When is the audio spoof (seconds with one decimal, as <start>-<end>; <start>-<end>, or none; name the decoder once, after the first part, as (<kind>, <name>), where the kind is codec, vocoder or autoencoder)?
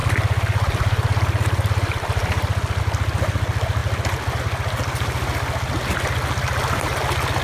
0.0-2.8 (vocoder, BigVGAN v2)